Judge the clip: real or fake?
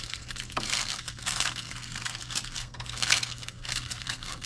fake